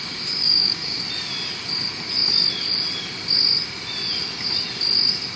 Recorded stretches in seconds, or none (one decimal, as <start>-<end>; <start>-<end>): 0.0-0.4; 1.0-5.4